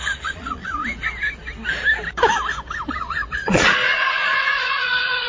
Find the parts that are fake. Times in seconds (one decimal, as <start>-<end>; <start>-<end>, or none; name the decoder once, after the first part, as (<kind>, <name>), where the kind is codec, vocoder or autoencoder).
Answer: 0.0-0.8 (vocoder, Vocos); 2.9-5.3